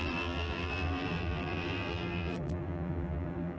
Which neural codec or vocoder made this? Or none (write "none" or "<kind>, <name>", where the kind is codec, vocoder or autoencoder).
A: vocoder, BigVGAN v2